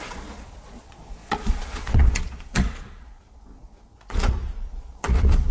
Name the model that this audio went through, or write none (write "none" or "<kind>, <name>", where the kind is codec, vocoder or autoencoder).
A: vocoder, Vocos